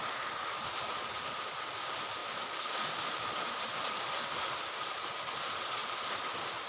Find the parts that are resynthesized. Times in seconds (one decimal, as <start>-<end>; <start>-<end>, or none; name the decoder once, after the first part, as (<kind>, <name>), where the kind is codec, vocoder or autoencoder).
0.0-2.2 (vocoder, BigVGAN v2); 4.4-5.8